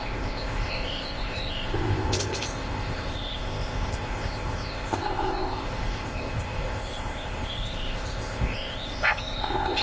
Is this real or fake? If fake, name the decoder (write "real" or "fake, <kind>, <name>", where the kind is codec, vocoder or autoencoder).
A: fake, codec, ZipCodec